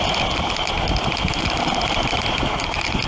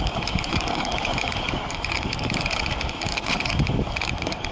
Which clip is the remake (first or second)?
second